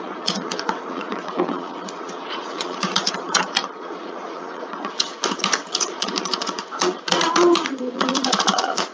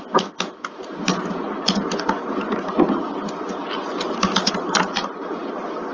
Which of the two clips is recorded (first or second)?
second